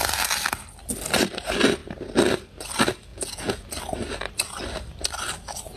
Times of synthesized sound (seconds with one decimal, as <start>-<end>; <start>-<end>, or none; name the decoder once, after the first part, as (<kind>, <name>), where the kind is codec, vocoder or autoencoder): 3.1-3.6 (vocoder, Vocos)